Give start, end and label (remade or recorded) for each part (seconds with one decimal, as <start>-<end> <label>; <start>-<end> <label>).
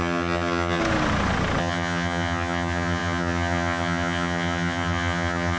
0.0-0.8 remade; 0.8-1.6 recorded; 1.6-5.6 remade